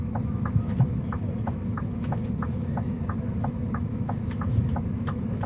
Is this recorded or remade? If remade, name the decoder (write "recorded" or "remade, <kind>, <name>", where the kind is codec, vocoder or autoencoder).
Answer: remade, autoencoder, DAC-VAE